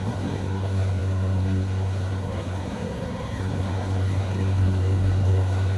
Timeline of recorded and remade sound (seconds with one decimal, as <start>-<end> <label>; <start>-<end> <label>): 0.0-5.8 remade